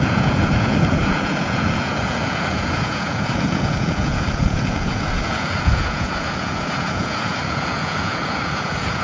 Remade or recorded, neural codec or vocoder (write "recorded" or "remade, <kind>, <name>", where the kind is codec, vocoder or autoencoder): remade, vocoder, Vocos